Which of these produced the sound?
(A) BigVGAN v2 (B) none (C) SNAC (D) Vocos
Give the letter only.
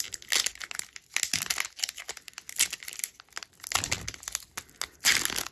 B